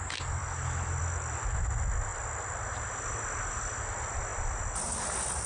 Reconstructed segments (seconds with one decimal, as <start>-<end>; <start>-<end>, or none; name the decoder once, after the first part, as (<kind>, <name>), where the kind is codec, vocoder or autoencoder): none